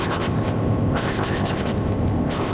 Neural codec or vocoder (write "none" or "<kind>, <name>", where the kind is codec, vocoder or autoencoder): codec, ZipCodec